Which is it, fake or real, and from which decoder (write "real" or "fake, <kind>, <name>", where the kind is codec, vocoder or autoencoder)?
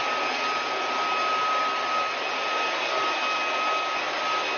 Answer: real